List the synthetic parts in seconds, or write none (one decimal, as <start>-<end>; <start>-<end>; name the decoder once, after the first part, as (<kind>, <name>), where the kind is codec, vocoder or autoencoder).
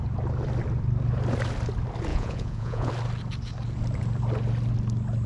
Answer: 2.1-2.9 (vocoder, Vocos)